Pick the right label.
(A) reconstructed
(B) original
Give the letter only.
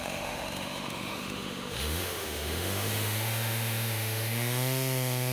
A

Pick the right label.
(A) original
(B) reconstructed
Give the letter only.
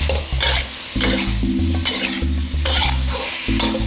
A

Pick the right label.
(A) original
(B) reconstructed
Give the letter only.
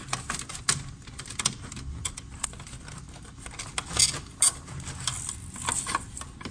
A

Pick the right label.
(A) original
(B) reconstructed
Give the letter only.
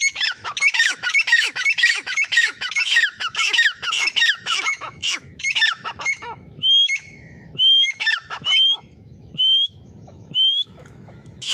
B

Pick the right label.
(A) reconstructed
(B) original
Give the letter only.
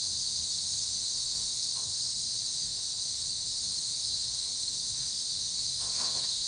A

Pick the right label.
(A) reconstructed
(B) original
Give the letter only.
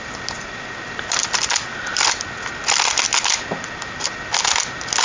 B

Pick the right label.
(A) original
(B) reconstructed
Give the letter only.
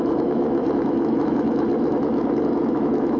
B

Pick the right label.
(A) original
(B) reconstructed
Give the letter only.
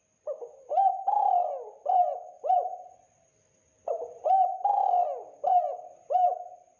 A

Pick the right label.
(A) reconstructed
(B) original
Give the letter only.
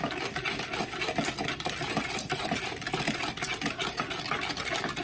B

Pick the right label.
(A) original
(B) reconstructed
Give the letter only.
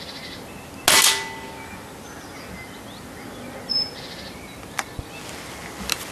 A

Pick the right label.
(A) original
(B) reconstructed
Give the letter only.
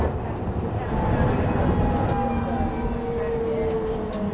A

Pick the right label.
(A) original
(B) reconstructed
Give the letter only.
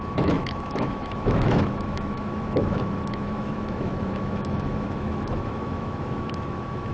B